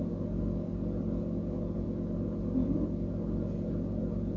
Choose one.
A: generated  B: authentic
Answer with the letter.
B